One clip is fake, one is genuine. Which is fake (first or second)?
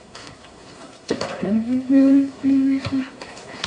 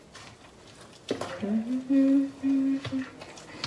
first